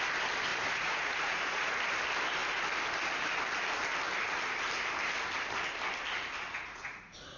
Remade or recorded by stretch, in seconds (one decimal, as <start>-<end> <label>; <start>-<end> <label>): 0.0-0.5 recorded; 0.5-1.7 remade; 1.7-6.5 recorded; 6.5-7.4 remade